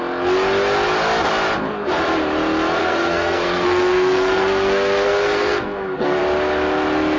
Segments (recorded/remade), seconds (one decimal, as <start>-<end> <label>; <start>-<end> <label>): 0.0-2.8 recorded; 2.8-6.2 remade; 6.2-7.2 recorded

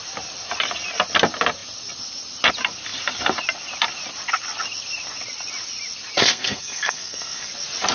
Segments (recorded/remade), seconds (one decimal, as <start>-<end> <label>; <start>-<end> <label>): 0.0-6.2 recorded; 6.2-7.5 remade; 7.5-7.9 recorded

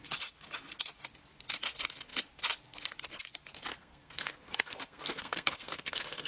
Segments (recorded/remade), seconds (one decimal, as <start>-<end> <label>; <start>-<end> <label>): 0.0-3.7 recorded; 3.7-6.3 remade

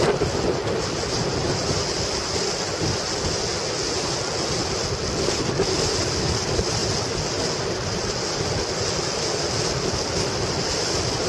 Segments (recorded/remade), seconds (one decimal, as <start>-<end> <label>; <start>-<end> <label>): 0.0-11.3 recorded

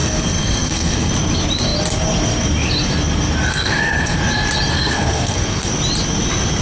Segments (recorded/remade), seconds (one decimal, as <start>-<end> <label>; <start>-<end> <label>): 0.0-1.1 remade; 1.1-3.5 recorded; 3.5-4.2 remade; 4.2-4.7 recorded; 4.7-5.7 remade; 5.7-6.6 recorded

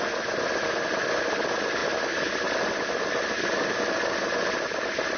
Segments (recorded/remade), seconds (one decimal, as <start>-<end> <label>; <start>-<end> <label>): 0.0-5.2 recorded